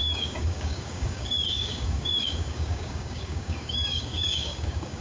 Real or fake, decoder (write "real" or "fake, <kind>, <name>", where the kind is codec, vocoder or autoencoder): fake, codec, DAC